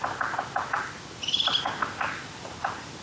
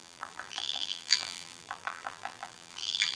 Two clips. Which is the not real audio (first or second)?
second